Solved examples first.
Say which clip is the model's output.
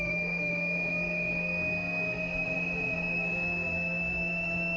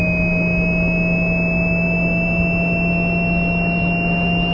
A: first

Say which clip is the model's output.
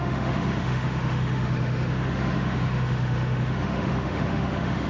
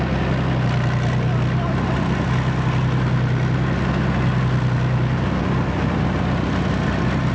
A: first